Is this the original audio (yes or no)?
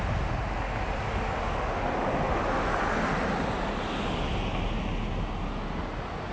yes